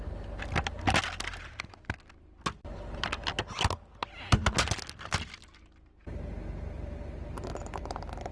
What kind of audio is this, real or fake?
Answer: real